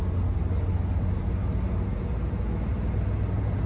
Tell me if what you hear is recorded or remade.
recorded